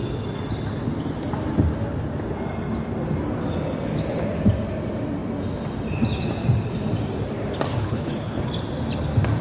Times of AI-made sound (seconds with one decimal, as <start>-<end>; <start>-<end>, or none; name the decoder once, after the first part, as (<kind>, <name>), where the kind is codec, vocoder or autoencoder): 7.8-8.4 (codec, HILCodec)